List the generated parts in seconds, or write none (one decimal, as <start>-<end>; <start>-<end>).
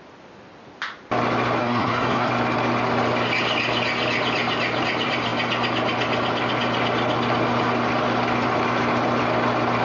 1.6-2.3